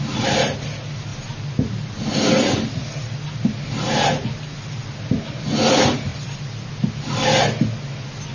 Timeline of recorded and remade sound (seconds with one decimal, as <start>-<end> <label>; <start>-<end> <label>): 0.0-8.3 recorded